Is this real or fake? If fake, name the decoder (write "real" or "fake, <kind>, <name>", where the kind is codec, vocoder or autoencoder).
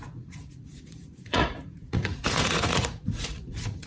fake, vocoder, Vocos